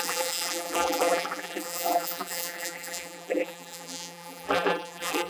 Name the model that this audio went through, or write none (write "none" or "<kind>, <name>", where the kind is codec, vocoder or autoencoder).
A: vocoder, BigVGAN v2